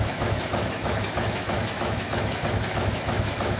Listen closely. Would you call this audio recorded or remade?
remade